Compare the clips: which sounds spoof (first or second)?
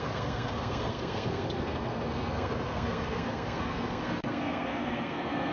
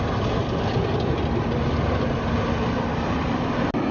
first